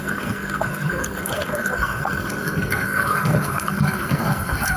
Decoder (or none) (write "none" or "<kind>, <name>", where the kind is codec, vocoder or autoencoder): codec, SNAC